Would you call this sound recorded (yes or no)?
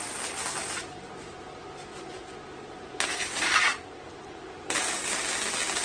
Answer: yes